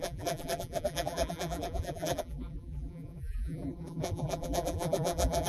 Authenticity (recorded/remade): remade